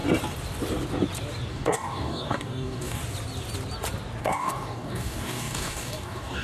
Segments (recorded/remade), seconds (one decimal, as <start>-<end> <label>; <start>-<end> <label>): 0.0-1.5 recorded; 1.5-3.0 remade; 3.0-4.2 recorded; 4.2-6.4 remade

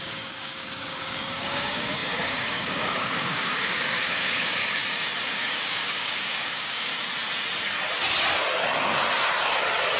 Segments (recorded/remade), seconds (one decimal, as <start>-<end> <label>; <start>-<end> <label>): 0.0-4.8 remade; 4.8-5.3 recorded; 5.3-6.9 remade; 6.9-10.0 recorded

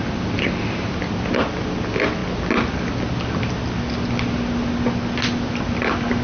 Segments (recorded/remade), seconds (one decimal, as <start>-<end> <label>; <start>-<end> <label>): 0.0-6.2 recorded

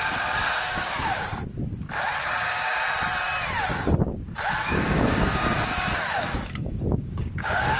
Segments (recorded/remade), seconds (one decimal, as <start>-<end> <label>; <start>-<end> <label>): 0.0-1.3 remade; 1.3-2.2 recorded; 2.2-2.7 remade; 2.7-4.5 recorded; 4.5-7.8 remade

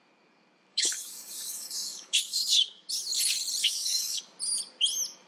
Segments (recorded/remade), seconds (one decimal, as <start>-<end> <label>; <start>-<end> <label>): 0.0-0.7 recorded; 0.7-2.9 remade; 2.9-3.6 recorded; 3.6-4.2 remade; 4.2-5.3 recorded

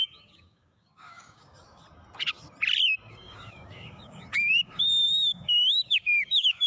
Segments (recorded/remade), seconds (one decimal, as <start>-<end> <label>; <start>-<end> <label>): 0.0-1.8 remade; 1.8-3.1 recorded; 3.1-6.7 remade

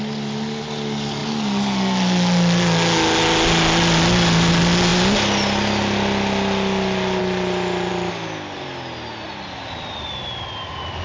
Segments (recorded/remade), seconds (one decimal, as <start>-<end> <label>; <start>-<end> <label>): 0.0-11.0 recorded